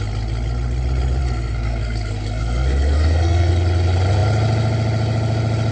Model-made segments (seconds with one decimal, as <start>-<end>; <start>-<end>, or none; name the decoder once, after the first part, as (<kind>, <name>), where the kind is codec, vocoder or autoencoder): 1.2-3.5 (codec, SNAC)

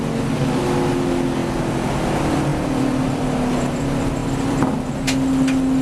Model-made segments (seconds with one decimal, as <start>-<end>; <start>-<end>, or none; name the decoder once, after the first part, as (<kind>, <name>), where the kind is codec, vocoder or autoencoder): 2.5-3.2 (vocoder, BigVGAN v2); 4.2-4.7

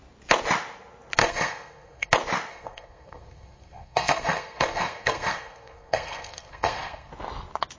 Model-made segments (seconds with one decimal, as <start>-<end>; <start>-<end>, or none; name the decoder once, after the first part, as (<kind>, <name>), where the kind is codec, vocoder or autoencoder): 1.2-2.1 (codec, SNAC); 2.5-7.1

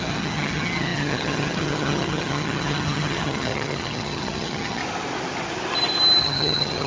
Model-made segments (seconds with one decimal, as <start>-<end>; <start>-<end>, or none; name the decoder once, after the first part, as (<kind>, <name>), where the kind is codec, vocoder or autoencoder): 0.0-4.8 (vocoder, HiFi-GAN); 6.2-6.9

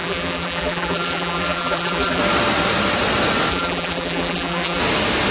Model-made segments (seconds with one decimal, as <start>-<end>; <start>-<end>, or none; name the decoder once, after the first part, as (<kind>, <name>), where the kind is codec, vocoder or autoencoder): 0.0-2.2 (vocoder, BigVGAN v2); 3.5-4.8

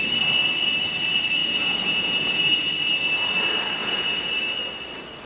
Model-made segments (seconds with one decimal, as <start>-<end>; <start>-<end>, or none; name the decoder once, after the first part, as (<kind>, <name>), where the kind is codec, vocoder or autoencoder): 1.4-2.7 (vocoder, Vocos); 3.8-4.3

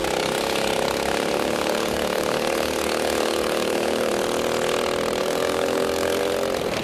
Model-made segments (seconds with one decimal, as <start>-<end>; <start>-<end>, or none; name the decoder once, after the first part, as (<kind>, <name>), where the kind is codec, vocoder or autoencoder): 0.0-4.1 (codec, DAC); 5.2-6.2